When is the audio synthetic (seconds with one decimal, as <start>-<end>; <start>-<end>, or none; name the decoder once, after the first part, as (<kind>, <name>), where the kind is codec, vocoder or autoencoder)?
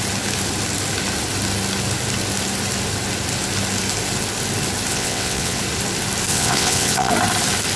4.9-5.6 (vocoder, WaveNeXt); 6.3-7.1